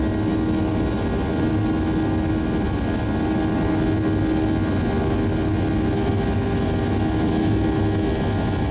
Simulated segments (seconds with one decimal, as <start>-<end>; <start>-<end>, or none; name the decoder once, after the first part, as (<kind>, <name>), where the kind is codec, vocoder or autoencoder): none